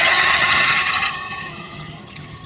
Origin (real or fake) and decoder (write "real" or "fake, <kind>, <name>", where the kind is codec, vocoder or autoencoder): fake, vocoder, HiFi-GAN